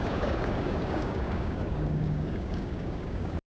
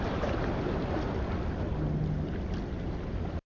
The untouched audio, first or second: second